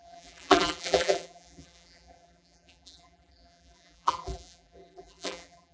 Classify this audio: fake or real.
fake